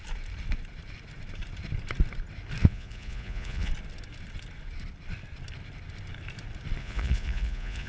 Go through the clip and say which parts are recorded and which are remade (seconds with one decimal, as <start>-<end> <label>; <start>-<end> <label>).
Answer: 0.0-2.6 recorded; 2.6-3.7 remade; 3.7-6.8 recorded; 6.8-7.9 remade